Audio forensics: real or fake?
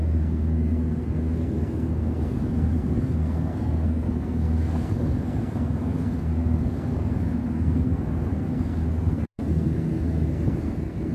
fake